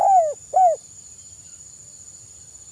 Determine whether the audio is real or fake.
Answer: real